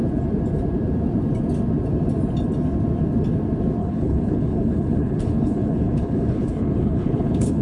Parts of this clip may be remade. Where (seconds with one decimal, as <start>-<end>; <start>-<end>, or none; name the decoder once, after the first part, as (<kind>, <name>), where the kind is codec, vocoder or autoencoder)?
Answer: 3.8-7.6 (codec, HILCodec)